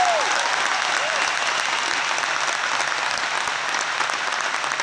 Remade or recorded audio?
recorded